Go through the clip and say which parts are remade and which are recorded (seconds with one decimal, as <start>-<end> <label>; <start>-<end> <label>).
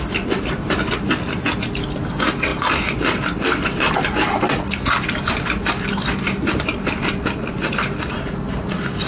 0.0-9.1 recorded